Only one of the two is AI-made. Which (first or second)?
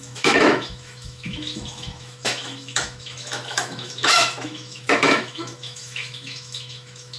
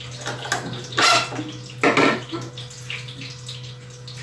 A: first